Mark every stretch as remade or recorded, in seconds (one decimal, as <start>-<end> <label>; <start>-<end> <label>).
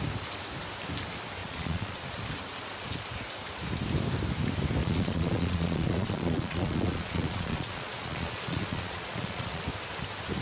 0.0-1.4 recorded; 1.4-2.2 remade; 2.2-4.8 recorded; 4.8-9.6 remade; 9.6-10.4 recorded